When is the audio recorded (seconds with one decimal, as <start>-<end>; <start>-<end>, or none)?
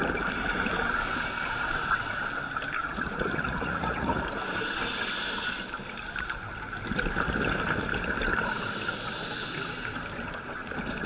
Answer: 0.0-2.8; 4.2-11.1